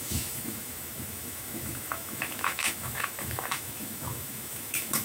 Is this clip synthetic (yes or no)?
yes